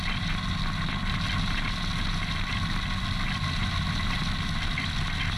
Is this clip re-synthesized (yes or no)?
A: no